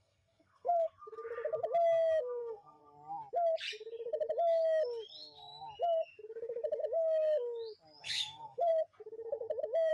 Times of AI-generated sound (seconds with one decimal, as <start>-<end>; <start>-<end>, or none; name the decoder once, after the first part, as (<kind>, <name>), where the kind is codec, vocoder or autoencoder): 0.0-0.9 (codec, SNAC); 2.2-2.8; 8.0-8.7